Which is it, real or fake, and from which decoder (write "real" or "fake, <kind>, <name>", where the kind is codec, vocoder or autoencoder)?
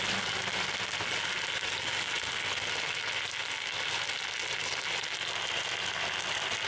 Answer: real